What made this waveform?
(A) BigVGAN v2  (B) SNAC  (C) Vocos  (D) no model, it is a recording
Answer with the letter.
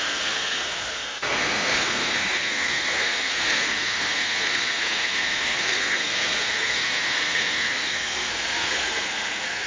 B